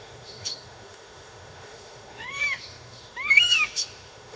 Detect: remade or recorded remade